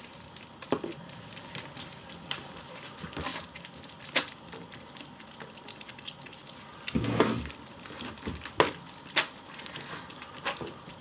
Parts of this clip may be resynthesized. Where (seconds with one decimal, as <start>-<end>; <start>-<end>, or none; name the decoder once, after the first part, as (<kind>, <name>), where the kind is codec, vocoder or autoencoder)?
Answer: none